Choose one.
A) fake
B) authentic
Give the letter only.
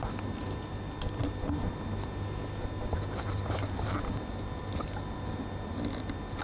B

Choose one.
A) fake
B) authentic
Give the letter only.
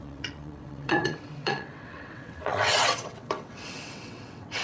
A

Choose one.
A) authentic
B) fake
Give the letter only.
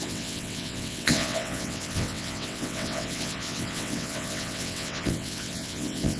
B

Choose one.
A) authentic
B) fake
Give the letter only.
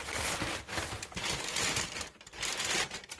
A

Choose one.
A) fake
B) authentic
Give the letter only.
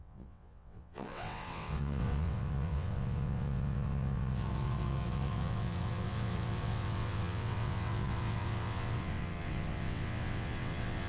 A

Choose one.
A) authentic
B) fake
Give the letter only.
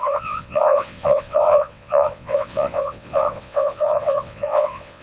B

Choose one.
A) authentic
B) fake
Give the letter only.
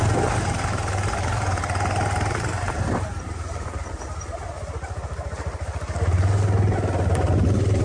A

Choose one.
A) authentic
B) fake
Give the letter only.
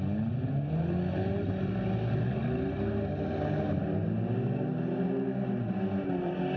A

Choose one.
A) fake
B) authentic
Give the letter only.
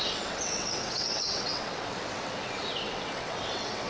A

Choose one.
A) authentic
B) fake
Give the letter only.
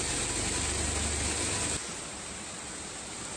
A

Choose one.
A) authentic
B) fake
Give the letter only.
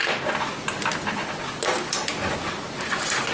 A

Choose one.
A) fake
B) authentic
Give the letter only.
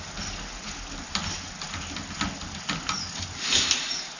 B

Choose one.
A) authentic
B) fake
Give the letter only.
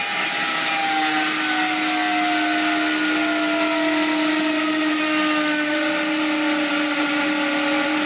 A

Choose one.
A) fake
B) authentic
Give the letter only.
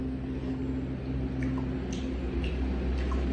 B